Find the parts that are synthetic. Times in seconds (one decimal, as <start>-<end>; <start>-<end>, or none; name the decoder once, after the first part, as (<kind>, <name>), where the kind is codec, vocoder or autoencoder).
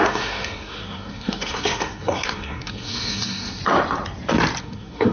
0.0-3.6 (codec, SNAC); 4.6-5.1